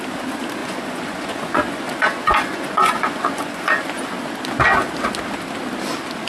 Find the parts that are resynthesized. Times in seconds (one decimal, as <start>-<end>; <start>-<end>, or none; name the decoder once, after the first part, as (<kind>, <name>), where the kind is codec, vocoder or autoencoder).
0.6-4.1 (vocoder, Vocos)